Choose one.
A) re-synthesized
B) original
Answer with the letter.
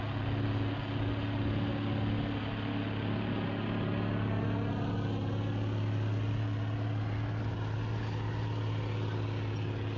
B